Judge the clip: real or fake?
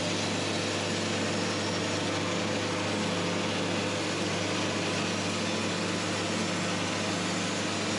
real